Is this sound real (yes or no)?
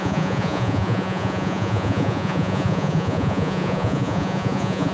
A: no